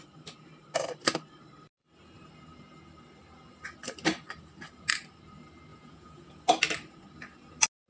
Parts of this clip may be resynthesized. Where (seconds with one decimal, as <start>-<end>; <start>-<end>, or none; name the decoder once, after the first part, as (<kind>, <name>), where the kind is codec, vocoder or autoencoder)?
5.7-6.4 (vocoder, Vocos)